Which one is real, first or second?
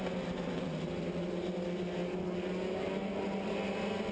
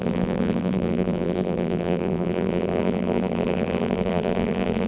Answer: first